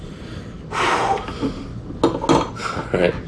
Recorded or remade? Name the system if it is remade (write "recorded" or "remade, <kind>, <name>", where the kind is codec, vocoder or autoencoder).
recorded